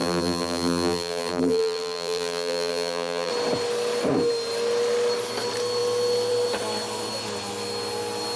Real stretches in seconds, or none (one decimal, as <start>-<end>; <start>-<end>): 3.3-8.4